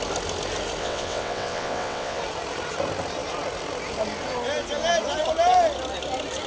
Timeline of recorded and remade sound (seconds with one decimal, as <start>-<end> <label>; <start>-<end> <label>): 0.0-0.8 recorded; 0.8-2.2 remade; 2.2-6.5 recorded